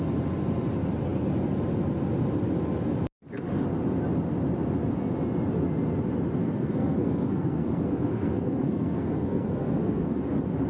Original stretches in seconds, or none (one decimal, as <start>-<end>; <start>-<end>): 0.0-6.4; 10.2-10.7